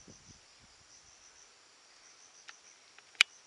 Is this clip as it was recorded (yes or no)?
yes